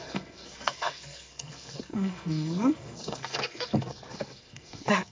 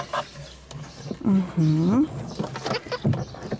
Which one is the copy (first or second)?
first